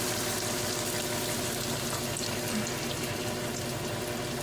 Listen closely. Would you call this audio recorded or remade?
recorded